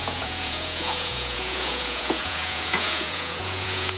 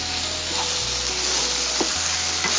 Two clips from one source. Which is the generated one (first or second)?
first